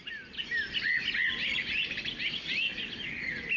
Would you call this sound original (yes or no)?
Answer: yes